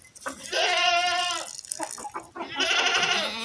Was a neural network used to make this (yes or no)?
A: no